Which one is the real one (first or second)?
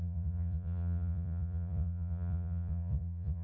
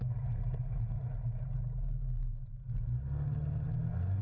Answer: second